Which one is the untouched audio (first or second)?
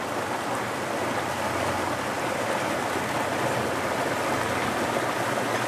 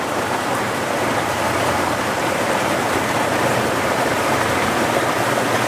first